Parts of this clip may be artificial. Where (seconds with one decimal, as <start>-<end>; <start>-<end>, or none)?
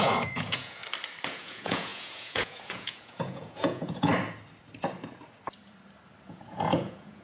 0.0-0.8; 1.3-4.1; 6.2-7.2